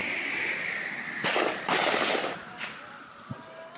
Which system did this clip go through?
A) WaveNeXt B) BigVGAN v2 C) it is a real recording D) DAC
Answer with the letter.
C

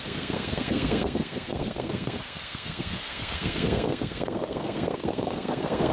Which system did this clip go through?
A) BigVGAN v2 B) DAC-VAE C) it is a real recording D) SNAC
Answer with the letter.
D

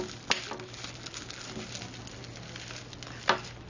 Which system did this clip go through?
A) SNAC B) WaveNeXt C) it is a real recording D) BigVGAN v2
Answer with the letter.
C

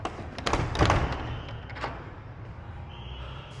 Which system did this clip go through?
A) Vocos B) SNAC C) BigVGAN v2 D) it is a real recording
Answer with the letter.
D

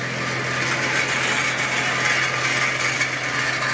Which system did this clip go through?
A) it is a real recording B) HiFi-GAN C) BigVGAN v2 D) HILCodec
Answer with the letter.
A